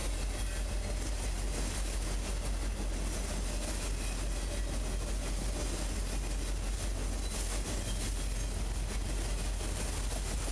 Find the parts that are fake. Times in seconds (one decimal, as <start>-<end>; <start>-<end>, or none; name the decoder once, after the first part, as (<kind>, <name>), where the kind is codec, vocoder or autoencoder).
none